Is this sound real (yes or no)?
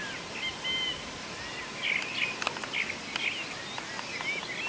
yes